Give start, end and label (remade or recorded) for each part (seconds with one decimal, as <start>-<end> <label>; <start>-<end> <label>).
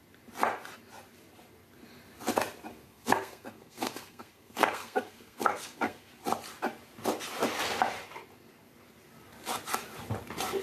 0.0-2.7 recorded; 2.7-6.1 remade; 6.1-10.6 recorded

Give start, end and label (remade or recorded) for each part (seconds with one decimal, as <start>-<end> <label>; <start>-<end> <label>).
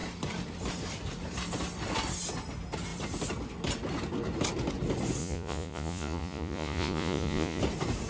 0.0-5.2 recorded; 5.2-7.6 remade; 7.6-8.1 recorded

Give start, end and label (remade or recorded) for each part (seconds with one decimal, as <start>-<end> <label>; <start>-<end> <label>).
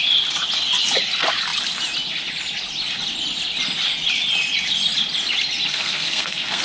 0.0-5.7 recorded; 5.7-6.6 remade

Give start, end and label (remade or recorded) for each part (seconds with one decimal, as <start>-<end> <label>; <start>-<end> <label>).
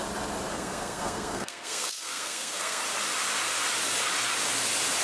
0.0-0.5 recorded; 0.5-2.8 remade; 2.8-5.0 recorded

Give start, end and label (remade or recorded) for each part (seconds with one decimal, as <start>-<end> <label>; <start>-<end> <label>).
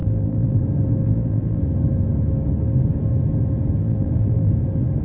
0.0-0.6 remade; 0.6-1.0 recorded; 1.0-1.6 remade; 1.6-3.8 recorded; 3.8-4.5 remade; 4.5-5.0 recorded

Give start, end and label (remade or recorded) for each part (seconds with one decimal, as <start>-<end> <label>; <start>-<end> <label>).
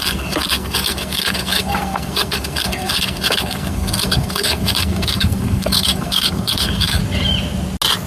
0.0-7.0 remade; 7.0-8.1 recorded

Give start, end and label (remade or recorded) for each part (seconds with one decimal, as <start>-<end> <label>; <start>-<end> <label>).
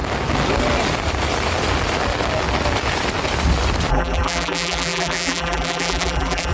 0.0-3.9 recorded; 3.9-6.5 remade